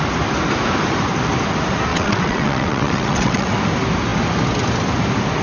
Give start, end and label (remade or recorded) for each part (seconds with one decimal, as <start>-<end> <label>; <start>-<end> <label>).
0.0-1.9 recorded; 1.9-3.5 remade; 3.5-5.4 recorded